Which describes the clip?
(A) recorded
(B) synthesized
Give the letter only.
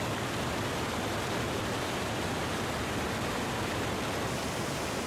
A